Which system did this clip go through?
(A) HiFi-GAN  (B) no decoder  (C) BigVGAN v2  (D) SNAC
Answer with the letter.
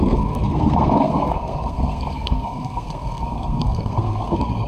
D